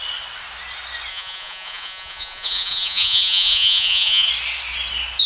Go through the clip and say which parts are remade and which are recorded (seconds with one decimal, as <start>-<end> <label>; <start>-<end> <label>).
0.0-1.1 recorded; 1.1-4.3 remade; 4.3-5.3 recorded